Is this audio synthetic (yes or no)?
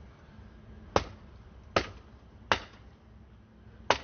no